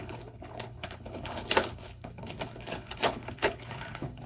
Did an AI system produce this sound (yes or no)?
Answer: yes